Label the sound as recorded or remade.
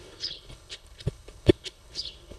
remade